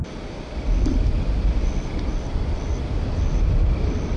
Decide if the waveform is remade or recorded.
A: recorded